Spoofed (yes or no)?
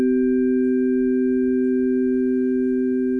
no